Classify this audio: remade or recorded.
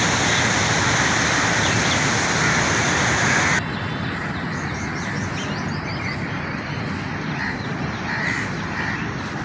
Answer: recorded